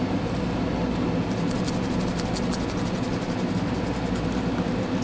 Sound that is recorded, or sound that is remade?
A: recorded